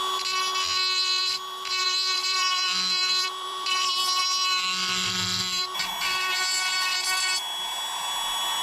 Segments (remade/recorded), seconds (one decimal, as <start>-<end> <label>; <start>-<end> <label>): 0.0-1.2 recorded; 1.2-5.9 remade; 5.9-8.6 recorded